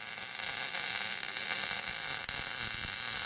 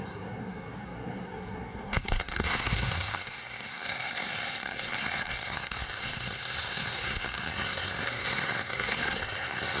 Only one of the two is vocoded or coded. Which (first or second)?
second